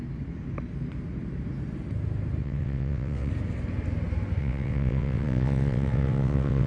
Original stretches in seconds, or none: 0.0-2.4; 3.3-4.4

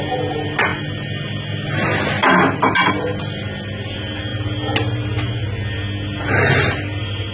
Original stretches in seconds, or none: 0.0-7.3

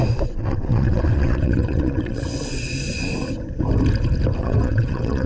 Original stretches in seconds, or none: 0.0-0.4; 2.7-4.4

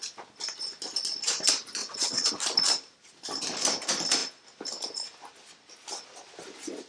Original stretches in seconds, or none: 0.0-1.8; 2.3-6.9